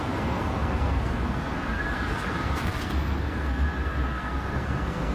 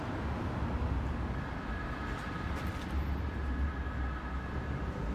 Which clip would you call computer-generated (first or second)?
first